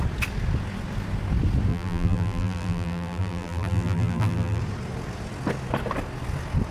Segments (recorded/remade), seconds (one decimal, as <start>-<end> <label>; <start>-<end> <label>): 0.0-1.7 recorded; 1.7-4.6 remade; 4.6-6.7 recorded